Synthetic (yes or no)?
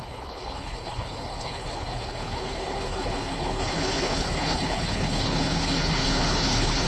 yes